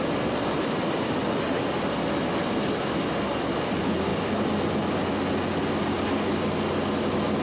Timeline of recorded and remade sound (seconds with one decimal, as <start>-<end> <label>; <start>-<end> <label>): 0.0-7.4 recorded